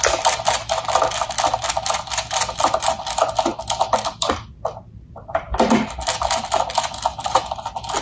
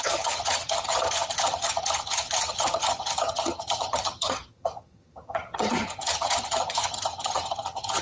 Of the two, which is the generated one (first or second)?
second